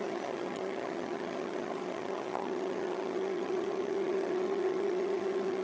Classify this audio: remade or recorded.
remade